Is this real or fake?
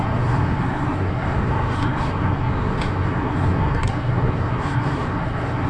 fake